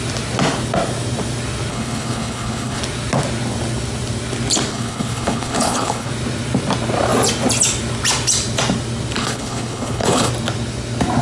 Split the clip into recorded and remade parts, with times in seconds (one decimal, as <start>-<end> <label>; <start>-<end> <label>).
0.0-1.7 recorded; 1.7-2.8 remade; 2.8-4.7 recorded; 4.7-6.1 remade; 6.1-9.2 recorded; 9.2-10.3 remade; 10.3-11.2 recorded